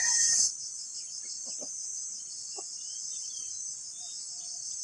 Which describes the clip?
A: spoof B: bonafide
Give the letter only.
B